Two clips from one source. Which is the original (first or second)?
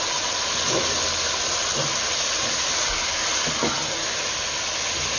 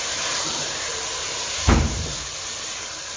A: first